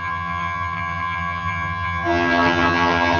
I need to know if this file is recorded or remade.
remade